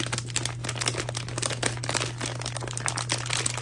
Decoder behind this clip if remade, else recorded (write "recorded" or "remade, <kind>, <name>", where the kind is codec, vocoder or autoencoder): recorded